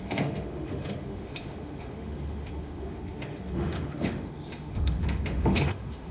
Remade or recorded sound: remade